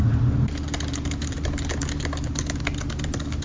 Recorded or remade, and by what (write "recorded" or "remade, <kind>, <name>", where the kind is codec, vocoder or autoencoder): recorded